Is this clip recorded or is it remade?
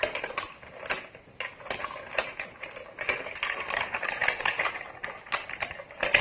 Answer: recorded